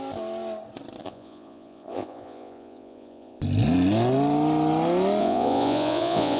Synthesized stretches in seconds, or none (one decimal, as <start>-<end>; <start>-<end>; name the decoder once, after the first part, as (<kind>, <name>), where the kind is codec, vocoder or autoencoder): 1.0-3.4 (vocoder, Vocos); 5.2-6.4